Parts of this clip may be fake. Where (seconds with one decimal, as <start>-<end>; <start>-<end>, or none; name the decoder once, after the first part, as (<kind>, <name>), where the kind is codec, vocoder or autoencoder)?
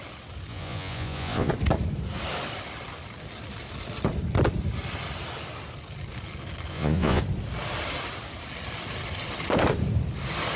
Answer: 0.5-1.5 (vocoder, Vocos); 6.7-7.2